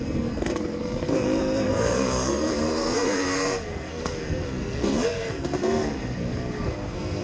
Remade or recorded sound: remade